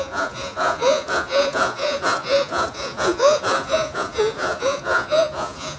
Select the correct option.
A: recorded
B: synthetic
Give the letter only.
B